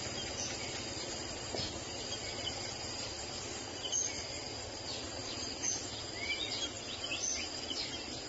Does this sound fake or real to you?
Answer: real